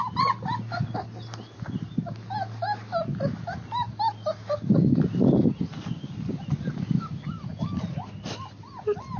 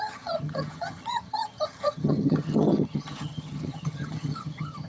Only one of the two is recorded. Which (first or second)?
first